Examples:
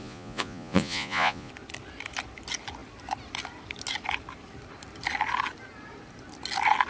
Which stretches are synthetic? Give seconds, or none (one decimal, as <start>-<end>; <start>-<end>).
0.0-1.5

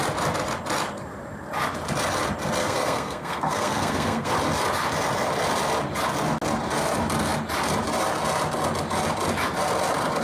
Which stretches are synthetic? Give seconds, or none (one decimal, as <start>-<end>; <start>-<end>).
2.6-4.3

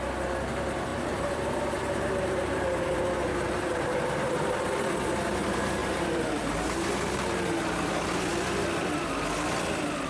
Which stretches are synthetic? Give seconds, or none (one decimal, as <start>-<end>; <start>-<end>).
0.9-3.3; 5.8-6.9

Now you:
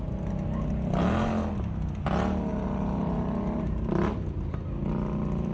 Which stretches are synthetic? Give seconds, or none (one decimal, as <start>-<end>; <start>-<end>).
2.5-4.1